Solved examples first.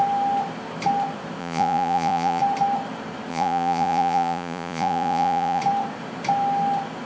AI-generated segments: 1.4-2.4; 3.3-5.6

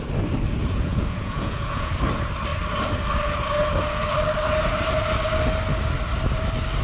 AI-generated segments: 0.6-1.9

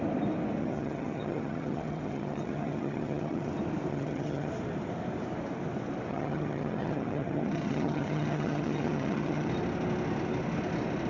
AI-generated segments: 0.6-3.5; 3.9-4.5; 6.1-9.5

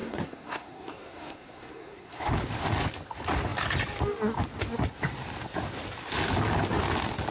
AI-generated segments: 0.0-2.3

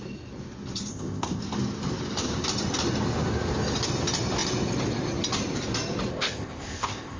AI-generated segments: 0.9-1.4; 6.1-7.2

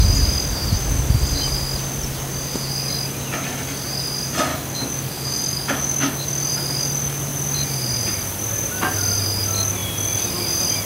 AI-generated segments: 4.5-6.2

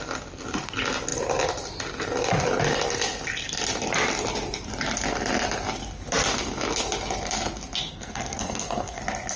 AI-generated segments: 7.9-9.0